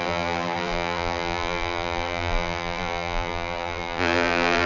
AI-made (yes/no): yes